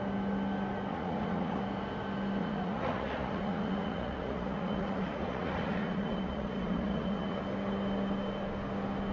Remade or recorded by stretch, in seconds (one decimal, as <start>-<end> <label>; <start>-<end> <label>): 0.0-0.9 recorded; 0.9-1.6 remade; 1.6-2.4 recorded; 2.4-7.4 remade; 7.4-9.1 recorded